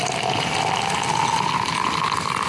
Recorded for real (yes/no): yes